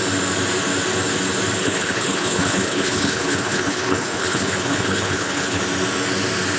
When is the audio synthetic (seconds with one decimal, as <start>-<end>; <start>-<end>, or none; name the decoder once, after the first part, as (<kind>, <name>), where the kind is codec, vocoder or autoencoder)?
1.6-5.6 (codec, HILCodec)